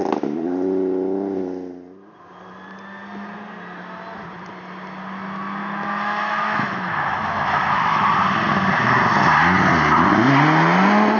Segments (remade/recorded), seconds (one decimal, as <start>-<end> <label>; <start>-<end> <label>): 0.0-5.6 recorded; 5.6-8.1 remade; 8.1-11.2 recorded